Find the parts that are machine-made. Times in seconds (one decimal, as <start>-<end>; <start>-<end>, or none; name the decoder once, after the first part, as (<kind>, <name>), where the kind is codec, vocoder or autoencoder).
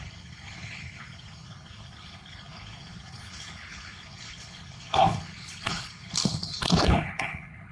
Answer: 0.0-7.7 (codec, HILCodec)